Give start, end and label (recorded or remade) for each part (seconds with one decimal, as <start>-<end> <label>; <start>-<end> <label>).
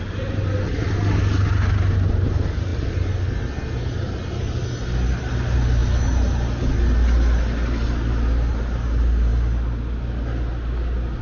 0.0-11.2 recorded